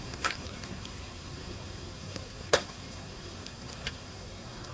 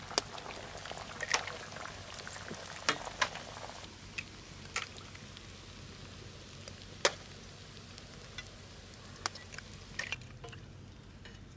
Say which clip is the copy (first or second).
first